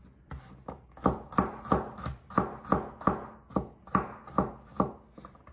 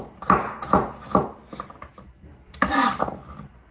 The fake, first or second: second